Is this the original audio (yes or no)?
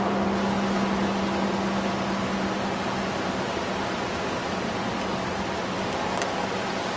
yes